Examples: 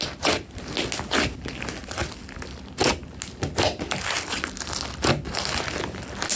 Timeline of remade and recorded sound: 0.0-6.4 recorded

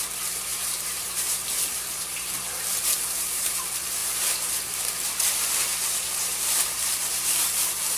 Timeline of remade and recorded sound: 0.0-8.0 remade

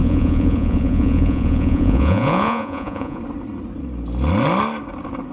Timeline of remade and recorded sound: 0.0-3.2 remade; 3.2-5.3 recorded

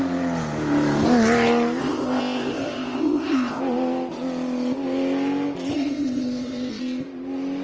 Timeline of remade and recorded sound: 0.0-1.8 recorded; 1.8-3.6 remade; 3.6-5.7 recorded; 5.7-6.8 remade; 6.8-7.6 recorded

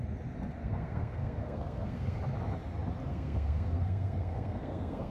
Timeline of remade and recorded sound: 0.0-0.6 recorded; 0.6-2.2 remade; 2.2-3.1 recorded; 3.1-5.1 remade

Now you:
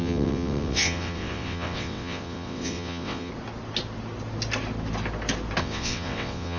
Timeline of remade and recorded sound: 0.0-3.3 remade; 3.3-5.6 recorded; 5.6-6.6 remade

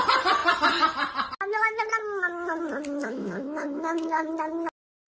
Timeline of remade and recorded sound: 0.0-3.0 recorded; 3.0-4.3 remade; 4.3-5.1 recorded